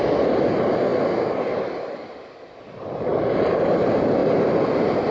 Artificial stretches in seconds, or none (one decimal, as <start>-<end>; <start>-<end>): none